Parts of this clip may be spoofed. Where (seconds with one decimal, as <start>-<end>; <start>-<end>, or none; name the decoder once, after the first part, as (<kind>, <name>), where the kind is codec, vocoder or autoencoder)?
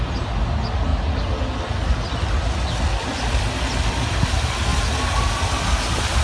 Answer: none